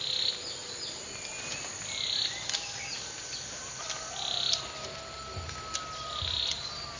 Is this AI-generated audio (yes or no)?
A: no